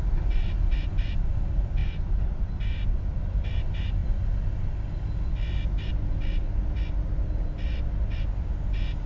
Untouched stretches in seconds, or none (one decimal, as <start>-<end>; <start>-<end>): 0.0-9.1